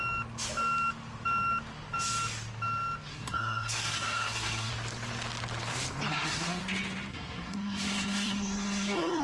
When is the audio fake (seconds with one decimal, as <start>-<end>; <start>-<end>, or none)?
3.1-4.7; 6.1-6.6; 7.1-9.2